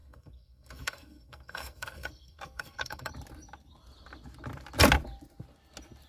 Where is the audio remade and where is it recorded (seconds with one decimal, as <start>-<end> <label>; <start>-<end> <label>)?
0.0-3.1 remade; 3.1-6.1 recorded